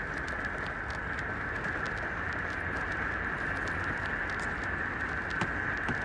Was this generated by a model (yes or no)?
no